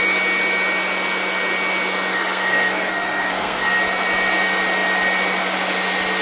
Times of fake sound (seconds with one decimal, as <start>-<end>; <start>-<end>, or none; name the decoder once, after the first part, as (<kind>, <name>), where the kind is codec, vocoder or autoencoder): 2.1-3.8 (codec, SNAC)